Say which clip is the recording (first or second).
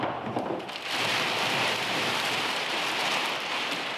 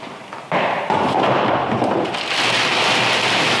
second